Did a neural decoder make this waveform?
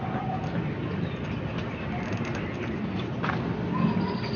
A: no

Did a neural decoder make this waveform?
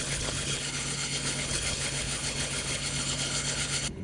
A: yes